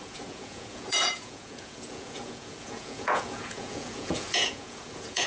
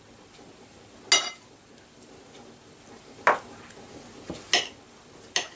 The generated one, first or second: first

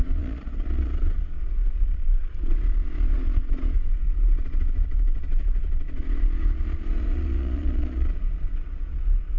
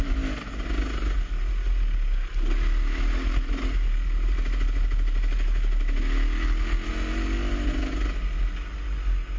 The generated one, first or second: first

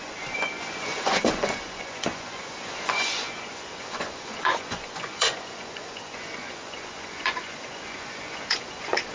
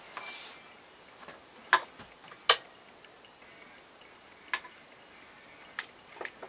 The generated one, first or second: first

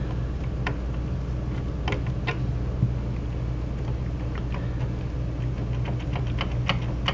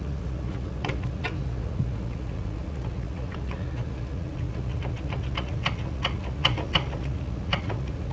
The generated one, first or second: second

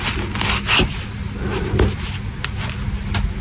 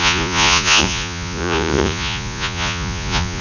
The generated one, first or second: second